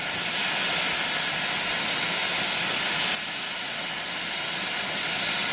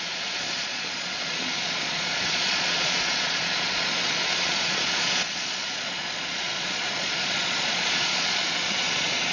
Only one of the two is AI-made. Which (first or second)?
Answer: second